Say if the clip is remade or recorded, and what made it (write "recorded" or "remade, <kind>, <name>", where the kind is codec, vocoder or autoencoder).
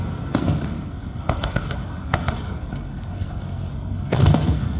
remade, codec, SNAC